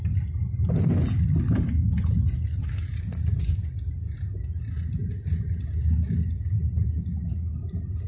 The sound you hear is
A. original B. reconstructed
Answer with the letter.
A